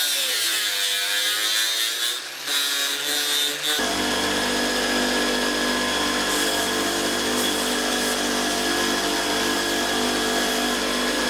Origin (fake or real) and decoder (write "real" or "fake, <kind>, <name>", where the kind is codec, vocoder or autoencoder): real